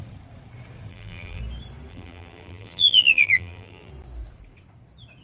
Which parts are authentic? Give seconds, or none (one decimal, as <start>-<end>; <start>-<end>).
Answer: 0.0-0.9; 1.4-1.9; 3.9-5.2